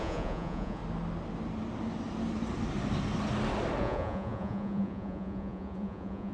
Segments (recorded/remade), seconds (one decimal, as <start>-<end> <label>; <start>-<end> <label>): 0.0-0.8 remade; 0.8-3.8 recorded; 3.8-6.3 remade